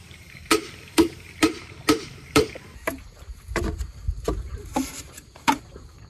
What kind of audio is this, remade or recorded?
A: remade